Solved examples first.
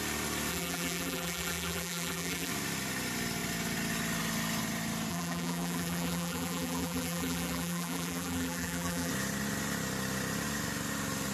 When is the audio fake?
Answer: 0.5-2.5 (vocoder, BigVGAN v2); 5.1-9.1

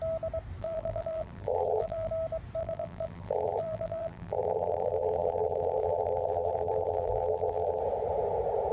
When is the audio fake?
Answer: 0.6-2.1 (vocoder, BigVGAN v2); 2.6-7.8

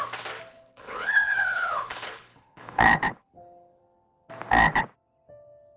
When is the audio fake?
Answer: 0.5-3.8 (codec, HILCodec)

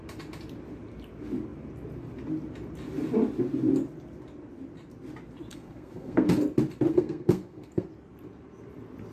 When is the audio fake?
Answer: 5.5-6.3 (codec, SNAC); 6.9-7.9

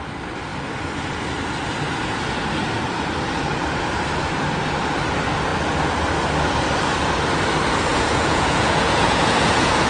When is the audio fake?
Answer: 7.9-9.9 (vocoder, Vocos)

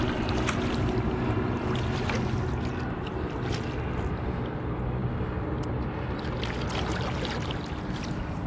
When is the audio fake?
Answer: none

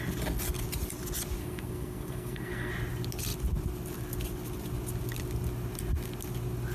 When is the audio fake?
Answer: 1.4-2.7 (codec, SNAC)